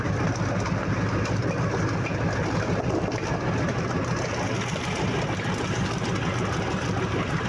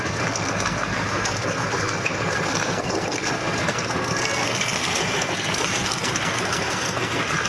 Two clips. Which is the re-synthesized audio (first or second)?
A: second